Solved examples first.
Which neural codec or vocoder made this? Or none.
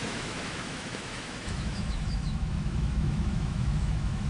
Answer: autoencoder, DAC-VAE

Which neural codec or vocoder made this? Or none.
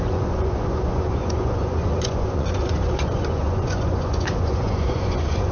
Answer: vocoder, Vocos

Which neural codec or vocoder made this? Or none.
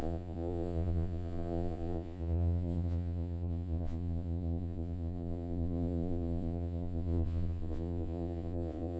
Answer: vocoder, Vocos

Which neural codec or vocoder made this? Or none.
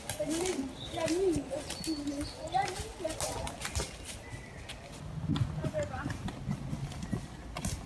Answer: none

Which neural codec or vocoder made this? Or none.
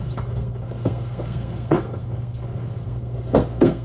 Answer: codec, SNAC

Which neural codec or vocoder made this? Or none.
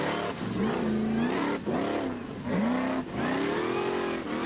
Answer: none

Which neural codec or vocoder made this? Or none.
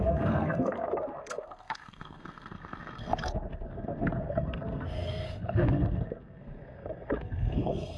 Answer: codec, SNAC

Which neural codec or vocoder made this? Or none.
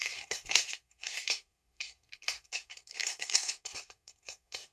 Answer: codec, SNAC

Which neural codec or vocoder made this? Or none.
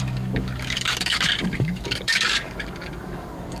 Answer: codec, DAC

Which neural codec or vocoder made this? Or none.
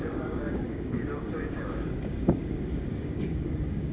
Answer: codec, DAC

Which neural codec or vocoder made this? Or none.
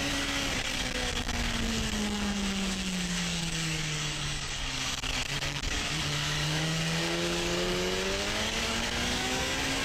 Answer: codec, DAC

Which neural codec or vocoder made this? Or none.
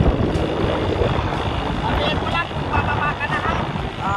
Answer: none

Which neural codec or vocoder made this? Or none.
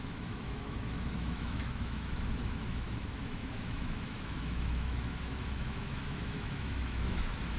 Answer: autoencoder, DAC-VAE